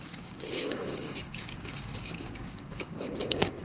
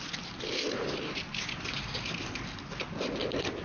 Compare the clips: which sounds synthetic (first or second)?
first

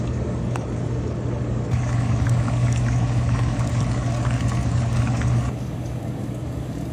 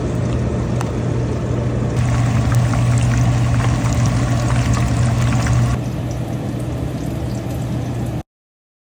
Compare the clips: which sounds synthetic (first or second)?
first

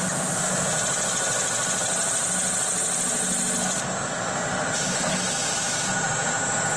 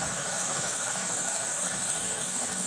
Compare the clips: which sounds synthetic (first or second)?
second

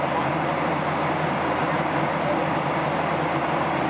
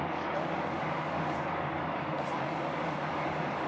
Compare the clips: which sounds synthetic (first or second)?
second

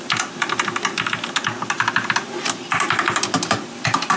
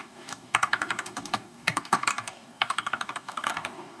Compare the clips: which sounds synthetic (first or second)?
second